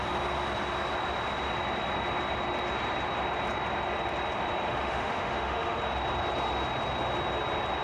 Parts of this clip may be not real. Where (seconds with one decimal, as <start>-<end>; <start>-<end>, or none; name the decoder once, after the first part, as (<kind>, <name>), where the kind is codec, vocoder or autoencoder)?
4.7-5.8 (autoencoder, DAC-VAE)